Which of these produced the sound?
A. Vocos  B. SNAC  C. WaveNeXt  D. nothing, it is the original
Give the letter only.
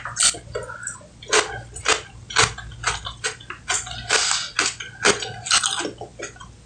D